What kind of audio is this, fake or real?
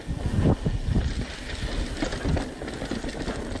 real